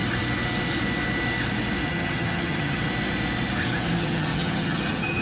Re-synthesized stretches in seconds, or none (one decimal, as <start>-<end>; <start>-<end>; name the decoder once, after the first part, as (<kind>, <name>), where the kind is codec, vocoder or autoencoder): 1.9-2.8 (vocoder, HiFi-GAN); 4.0-5.2